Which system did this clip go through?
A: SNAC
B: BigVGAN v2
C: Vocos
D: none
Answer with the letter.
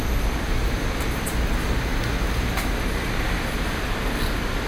D